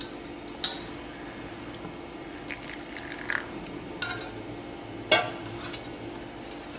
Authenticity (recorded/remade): recorded